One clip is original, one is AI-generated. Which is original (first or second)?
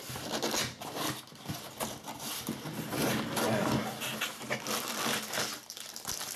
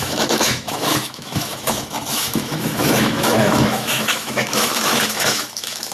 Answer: first